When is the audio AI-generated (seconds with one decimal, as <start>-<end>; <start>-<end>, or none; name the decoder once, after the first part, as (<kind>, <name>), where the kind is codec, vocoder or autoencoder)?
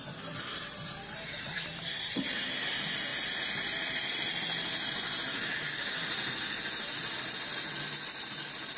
0.5-2.5 (vocoder, BigVGAN v2)